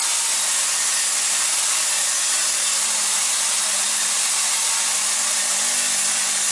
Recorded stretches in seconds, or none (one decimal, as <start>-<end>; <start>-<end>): 0.0-6.5